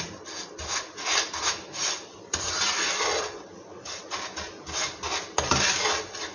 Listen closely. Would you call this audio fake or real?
real